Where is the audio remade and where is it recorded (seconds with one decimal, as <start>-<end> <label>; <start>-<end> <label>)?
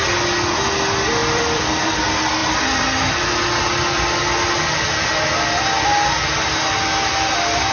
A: 0.0-1.2 recorded; 1.2-2.0 remade; 2.0-7.7 recorded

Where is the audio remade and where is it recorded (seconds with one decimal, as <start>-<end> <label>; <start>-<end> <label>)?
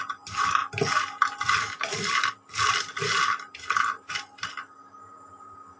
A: 0.0-5.8 recorded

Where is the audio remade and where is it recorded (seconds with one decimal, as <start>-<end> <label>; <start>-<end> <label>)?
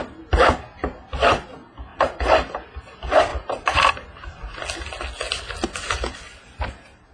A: 0.0-1.9 recorded; 1.9-2.5 remade; 2.5-3.3 recorded; 3.3-3.9 remade; 3.9-7.1 recorded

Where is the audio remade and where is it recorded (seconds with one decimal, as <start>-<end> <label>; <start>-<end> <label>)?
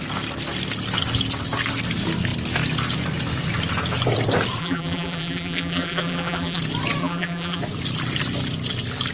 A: 0.0-4.6 recorded; 4.6-6.6 remade; 6.6-7.0 recorded; 7.0-7.6 remade; 7.6-9.1 recorded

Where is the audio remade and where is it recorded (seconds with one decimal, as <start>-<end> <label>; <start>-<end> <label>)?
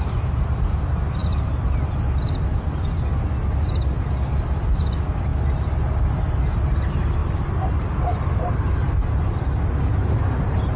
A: 0.0-7.2 recorded; 7.2-9.2 remade; 9.2-10.8 recorded